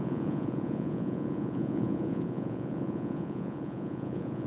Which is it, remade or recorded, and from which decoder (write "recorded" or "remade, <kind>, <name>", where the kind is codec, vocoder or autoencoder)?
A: remade, vocoder, Vocos